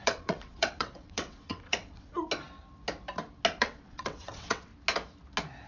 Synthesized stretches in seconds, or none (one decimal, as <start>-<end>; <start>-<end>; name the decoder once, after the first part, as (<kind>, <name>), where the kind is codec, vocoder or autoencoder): 0.0-2.1 (vocoder, WaveNeXt); 3.6-4.7